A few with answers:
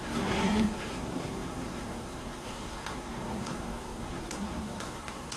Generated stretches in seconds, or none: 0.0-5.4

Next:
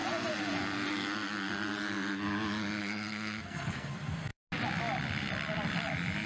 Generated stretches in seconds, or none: 2.8-3.9

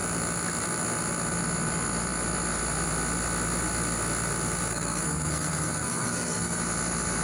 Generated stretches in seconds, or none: 4.7-6.6

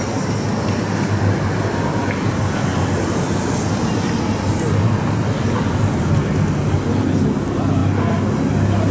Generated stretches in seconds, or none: none